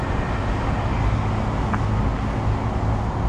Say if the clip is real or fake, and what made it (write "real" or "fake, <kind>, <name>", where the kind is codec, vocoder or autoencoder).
real